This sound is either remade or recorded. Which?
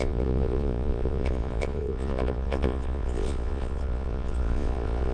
remade